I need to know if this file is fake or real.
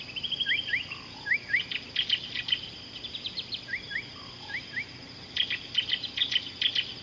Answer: real